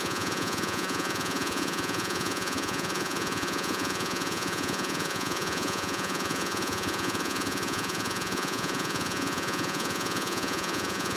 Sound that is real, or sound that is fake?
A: fake